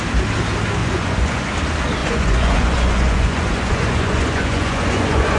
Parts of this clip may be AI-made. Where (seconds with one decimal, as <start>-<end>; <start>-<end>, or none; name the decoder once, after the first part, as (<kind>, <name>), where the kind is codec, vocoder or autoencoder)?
0.8-1.5 (vocoder, Vocos); 2.0-5.4